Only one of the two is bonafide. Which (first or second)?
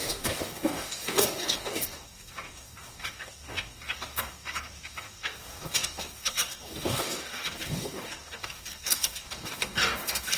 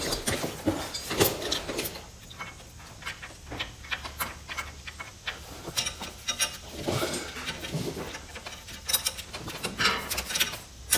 second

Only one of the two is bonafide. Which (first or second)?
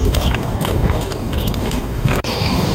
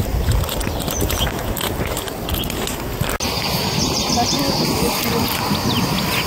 second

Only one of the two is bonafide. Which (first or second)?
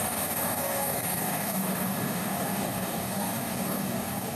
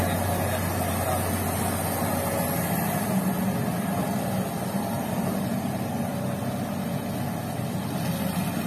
second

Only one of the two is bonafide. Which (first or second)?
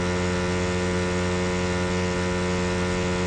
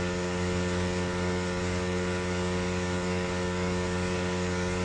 first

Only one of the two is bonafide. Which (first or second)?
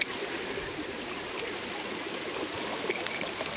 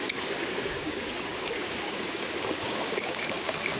first